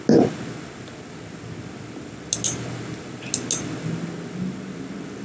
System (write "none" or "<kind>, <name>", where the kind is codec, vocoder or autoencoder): none